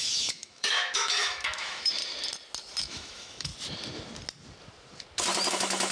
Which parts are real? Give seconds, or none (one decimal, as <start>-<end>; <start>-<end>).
2.0-2.8; 3.5-5.5